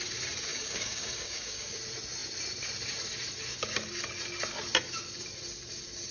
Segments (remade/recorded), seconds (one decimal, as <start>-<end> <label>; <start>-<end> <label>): 0.0-0.5 recorded; 0.5-1.8 remade; 1.8-6.1 recorded

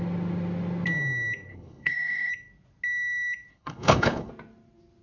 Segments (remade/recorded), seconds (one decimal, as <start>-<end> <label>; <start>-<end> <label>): 0.0-1.5 recorded; 1.5-2.3 remade; 2.3-3.5 recorded; 3.5-4.3 remade; 4.3-5.0 recorded

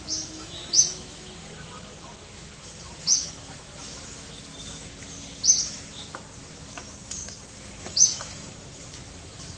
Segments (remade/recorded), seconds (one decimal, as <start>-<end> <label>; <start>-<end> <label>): 0.0-4.5 remade; 4.5-5.6 recorded; 5.6-9.6 remade

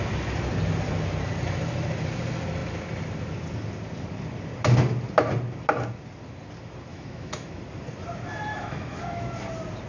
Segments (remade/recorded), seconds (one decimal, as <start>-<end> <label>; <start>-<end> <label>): 0.0-6.9 recorded; 6.9-7.6 remade; 7.6-8.5 recorded; 8.5-9.3 remade; 9.3-9.9 recorded

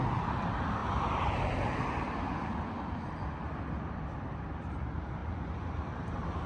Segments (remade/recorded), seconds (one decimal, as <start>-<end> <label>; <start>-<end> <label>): 0.0-6.5 recorded